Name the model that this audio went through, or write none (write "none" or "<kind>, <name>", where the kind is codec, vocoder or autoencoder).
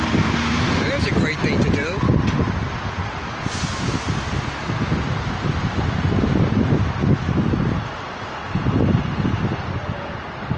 none